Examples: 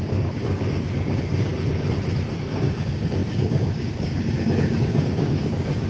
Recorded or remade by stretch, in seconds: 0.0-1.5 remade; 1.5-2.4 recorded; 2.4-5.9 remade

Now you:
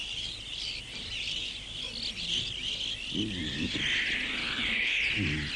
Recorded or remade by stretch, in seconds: 0.0-4.4 recorded; 4.4-5.1 remade; 5.1-5.6 recorded

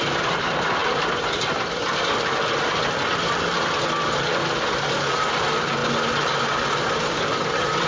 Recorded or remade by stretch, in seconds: 0.0-7.9 recorded

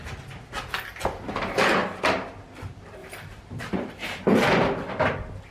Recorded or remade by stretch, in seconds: 0.0-1.8 recorded; 1.8-2.3 remade; 2.3-3.0 recorded; 3.0-4.5 remade; 4.5-5.5 recorded

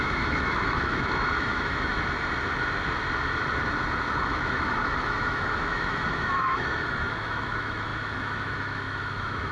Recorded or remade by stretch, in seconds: 0.0-1.9 remade; 1.9-4.1 recorded; 4.1-9.5 remade